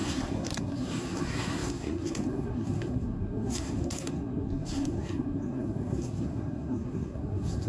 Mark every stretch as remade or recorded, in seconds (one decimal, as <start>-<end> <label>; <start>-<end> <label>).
0.0-7.7 remade